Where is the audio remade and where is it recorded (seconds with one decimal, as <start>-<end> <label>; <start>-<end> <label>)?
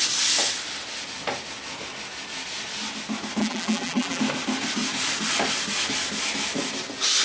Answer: 0.0-3.4 recorded; 3.4-4.2 remade; 4.2-7.2 recorded